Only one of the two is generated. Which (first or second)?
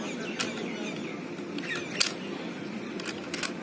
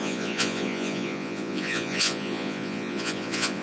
second